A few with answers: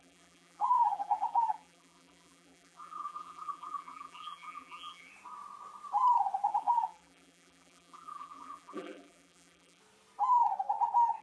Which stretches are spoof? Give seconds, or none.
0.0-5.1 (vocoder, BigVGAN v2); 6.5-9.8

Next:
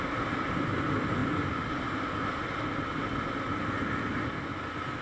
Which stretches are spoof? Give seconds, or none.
none